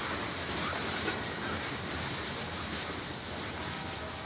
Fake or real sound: real